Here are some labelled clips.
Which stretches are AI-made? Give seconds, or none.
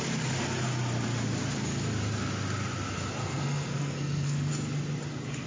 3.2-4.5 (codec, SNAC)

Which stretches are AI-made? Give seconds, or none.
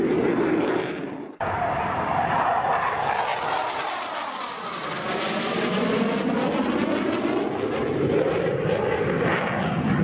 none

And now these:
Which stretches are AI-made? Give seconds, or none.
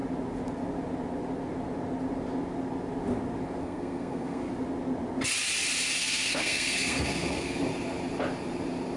3.6-4.5 (codec, SNAC); 6.0-7.6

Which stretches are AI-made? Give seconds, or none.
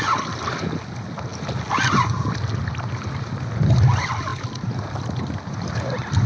none